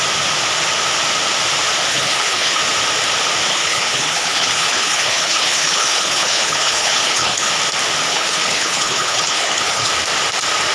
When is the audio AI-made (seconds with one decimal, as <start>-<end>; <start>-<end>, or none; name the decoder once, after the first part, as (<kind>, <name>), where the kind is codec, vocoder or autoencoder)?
1.9-2.6 (codec, HILCodec); 3.5-7.5; 8.1-9.9